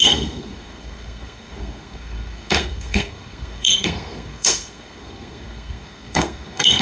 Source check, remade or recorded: remade